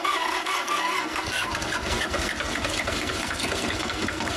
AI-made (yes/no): yes